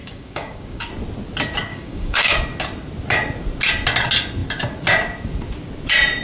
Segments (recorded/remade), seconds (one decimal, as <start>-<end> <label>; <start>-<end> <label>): 0.0-0.9 remade; 0.9-1.7 recorded; 1.7-2.4 remade; 2.4-6.2 recorded